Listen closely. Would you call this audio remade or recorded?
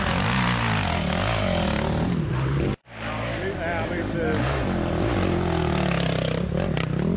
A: recorded